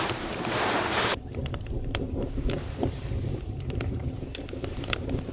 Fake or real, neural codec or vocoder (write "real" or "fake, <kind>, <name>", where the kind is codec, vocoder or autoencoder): fake, vocoder, BigVGAN v2